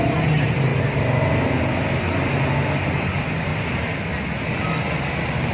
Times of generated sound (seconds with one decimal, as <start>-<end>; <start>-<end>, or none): none